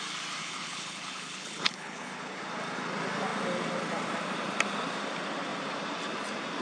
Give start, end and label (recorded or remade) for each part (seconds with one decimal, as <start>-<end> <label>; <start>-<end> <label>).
0.0-0.4 recorded; 0.4-2.4 remade; 2.4-6.6 recorded